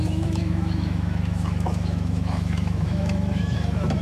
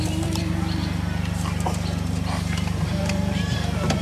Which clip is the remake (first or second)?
first